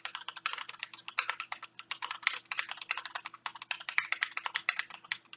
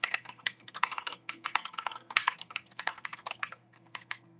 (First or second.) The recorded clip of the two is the first